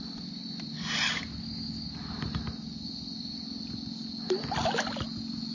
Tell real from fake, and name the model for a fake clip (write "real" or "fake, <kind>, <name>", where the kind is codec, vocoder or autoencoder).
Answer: real